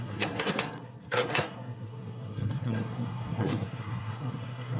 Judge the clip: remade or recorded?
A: remade